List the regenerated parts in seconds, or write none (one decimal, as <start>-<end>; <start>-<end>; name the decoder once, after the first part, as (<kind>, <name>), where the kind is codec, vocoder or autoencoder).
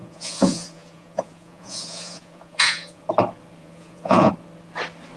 0.0-3.1 (vocoder, Vocos); 3.6-4.3